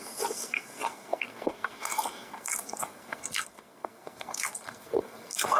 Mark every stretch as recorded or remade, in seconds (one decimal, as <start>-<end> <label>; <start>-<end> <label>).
0.0-5.6 remade